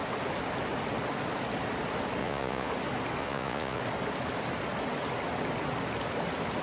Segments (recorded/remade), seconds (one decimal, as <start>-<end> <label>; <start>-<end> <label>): 0.0-2.2 recorded; 2.2-2.7 remade; 2.7-3.2 recorded; 3.2-3.8 remade; 3.8-6.6 recorded